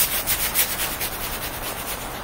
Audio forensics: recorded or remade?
recorded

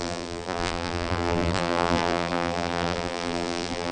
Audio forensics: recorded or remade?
remade